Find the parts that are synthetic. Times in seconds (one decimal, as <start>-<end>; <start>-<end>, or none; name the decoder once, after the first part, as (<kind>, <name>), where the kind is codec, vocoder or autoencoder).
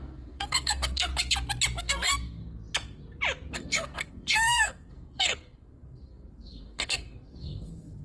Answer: 0.0-1.1 (codec, SNAC); 1.8-2.4; 3.5-8.0